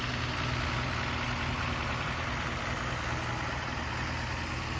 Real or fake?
real